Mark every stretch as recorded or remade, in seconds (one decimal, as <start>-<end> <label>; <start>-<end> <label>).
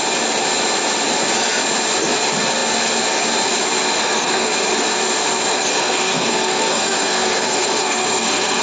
0.0-4.0 recorded; 4.0-4.5 remade; 4.5-5.5 recorded; 5.5-8.6 remade